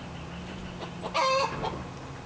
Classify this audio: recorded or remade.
recorded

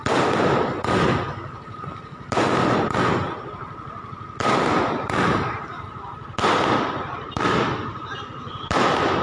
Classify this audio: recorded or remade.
recorded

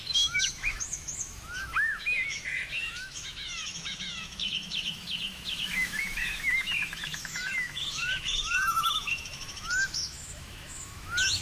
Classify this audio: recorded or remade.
remade